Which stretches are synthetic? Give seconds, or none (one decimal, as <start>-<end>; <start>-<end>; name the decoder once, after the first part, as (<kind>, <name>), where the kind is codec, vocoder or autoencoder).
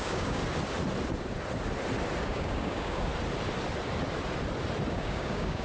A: 0.0-0.4 (codec, DAC); 2.2-3.1; 4.9-5.6